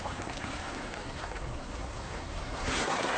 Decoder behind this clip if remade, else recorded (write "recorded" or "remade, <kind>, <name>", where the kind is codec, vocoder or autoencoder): remade, codec, SNAC